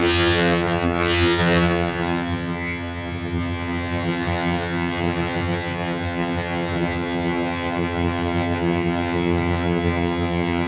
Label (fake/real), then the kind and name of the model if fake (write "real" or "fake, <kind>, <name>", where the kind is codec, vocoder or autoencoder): fake, vocoder, HiFi-GAN